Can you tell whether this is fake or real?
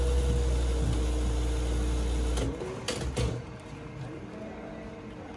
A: real